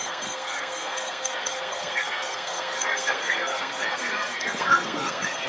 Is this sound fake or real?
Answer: fake